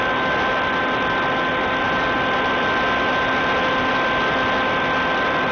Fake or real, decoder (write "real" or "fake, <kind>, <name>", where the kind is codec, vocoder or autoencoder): real